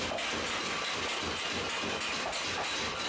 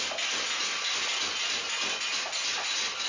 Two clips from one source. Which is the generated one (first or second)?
first